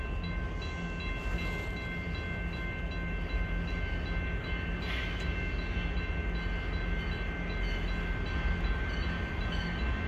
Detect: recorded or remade recorded